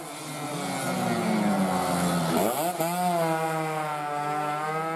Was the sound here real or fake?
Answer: real